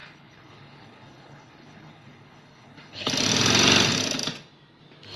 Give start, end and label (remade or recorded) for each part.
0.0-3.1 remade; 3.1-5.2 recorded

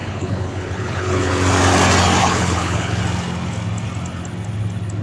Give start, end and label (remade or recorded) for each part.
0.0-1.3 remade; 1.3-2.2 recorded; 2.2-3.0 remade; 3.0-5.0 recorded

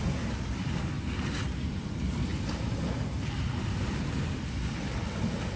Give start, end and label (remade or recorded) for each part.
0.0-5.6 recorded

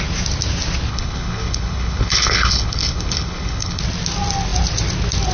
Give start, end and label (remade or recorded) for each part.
0.0-0.9 recorded; 0.9-3.8 remade; 3.8-5.3 recorded

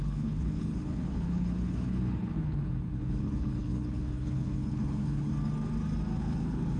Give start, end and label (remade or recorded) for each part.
0.0-5.3 remade; 5.3-6.2 recorded; 6.2-6.8 remade